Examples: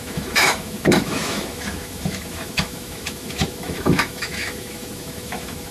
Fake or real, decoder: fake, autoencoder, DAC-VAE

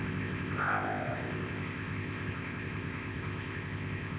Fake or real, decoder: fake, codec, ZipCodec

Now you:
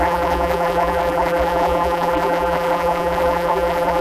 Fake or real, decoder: fake, vocoder, BigVGAN v2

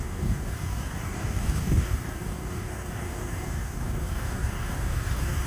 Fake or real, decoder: fake, codec, DAC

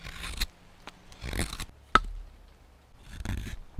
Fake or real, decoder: real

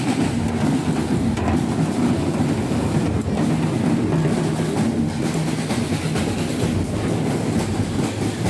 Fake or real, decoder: real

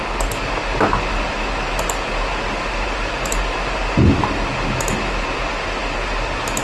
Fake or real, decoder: real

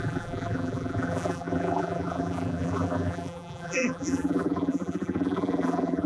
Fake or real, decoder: fake, vocoder, BigVGAN v2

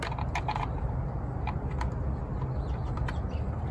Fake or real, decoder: real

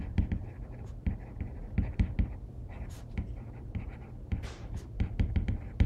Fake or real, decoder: fake, vocoder, BigVGAN v2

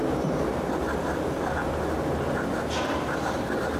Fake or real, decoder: real